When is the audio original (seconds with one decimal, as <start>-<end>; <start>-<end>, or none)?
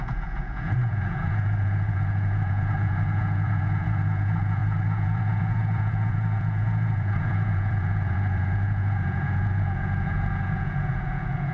none